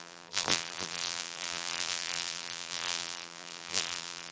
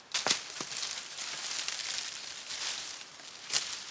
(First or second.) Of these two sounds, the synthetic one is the first